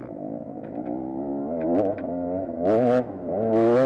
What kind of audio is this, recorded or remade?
remade